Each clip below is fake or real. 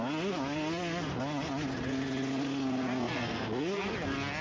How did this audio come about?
real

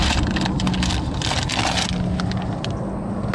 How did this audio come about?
real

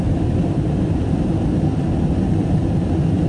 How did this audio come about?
real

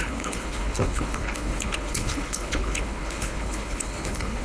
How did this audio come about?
fake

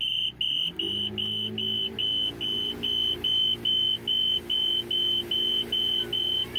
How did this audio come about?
real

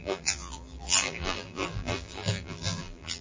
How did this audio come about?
fake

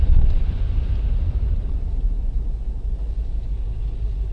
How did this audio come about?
real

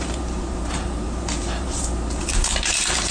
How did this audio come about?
fake